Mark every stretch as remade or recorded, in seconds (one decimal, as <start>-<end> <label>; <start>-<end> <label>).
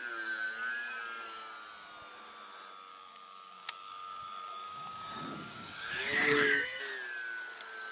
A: 0.0-2.9 recorded; 2.9-6.8 remade; 6.8-7.9 recorded